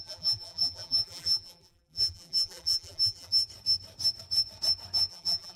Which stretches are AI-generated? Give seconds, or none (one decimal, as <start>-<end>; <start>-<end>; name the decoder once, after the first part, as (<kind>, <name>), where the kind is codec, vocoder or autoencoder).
0.0-3.3 (vocoder, BigVGAN v2); 5.1-5.6